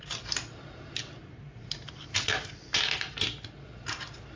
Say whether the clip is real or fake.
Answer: real